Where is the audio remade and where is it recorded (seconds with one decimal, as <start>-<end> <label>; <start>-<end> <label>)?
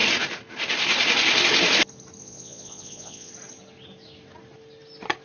0.0-2.2 recorded; 2.2-3.3 remade; 3.3-5.2 recorded